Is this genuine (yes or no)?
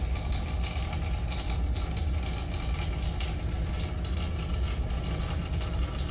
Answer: yes